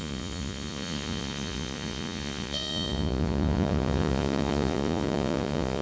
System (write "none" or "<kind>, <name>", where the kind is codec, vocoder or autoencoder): vocoder, Vocos